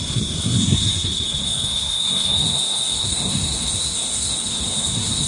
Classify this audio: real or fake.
fake